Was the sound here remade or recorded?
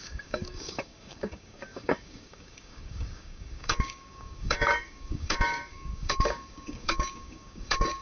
remade